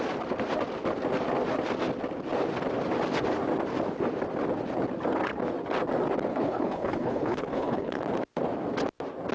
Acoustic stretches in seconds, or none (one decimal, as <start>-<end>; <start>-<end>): 0.0-6.3; 8.0-9.3